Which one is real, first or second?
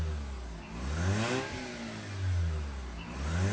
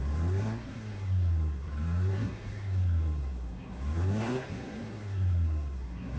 first